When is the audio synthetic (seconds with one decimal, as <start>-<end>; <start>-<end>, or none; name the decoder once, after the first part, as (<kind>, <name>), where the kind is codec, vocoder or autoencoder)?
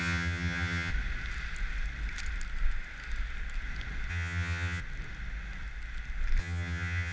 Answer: 0.0-0.9 (vocoder, HiFi-GAN); 4.1-4.8; 6.4-7.1